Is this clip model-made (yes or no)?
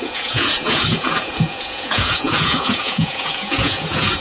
yes